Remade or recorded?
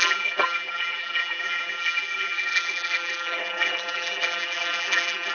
remade